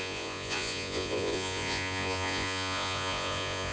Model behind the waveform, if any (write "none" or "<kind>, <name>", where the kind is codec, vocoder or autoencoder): vocoder, Vocos